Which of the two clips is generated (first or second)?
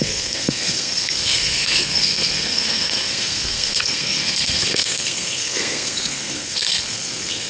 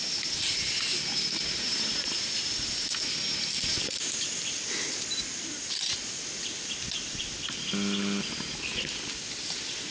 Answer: first